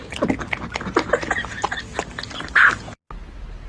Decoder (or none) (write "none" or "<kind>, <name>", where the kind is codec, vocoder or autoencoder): none